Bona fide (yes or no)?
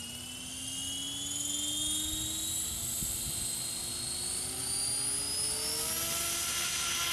yes